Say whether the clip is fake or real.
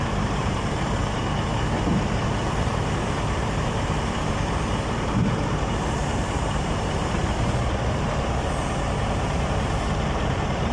fake